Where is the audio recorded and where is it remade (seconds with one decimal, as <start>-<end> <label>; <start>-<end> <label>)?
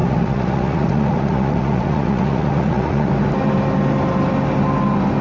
0.0-3.1 remade; 3.1-5.2 recorded